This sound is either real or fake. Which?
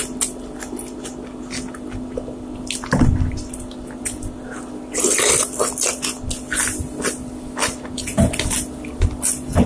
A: real